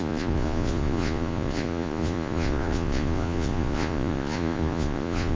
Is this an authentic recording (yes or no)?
no